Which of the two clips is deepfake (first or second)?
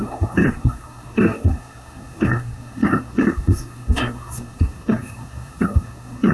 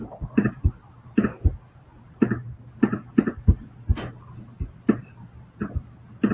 first